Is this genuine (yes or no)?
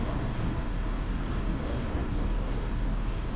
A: no